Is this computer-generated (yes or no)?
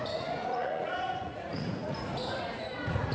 yes